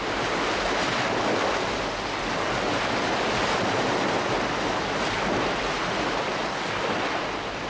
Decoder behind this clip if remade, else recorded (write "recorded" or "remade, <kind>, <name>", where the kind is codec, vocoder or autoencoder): recorded